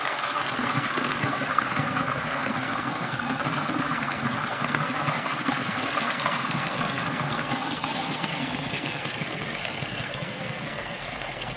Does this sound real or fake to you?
fake